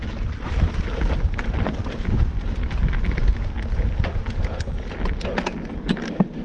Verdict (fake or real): real